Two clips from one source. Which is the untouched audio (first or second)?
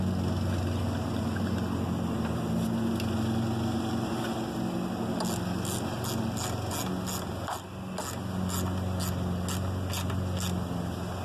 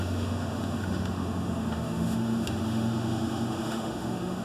first